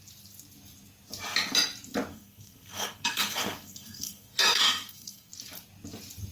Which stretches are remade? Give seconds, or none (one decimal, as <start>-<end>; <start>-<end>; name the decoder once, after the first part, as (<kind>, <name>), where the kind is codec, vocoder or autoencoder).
2.1-5.3 (codec, SNAC)